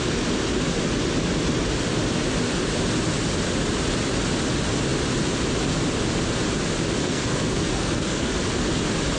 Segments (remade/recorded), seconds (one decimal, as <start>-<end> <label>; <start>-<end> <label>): 0.0-7.0 recorded; 7.0-8.3 remade; 8.3-9.2 recorded